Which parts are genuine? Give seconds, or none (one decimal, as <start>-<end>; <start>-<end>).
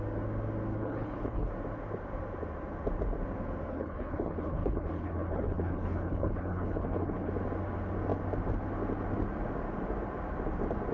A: 0.0-0.7; 1.5-3.7; 7.3-10.9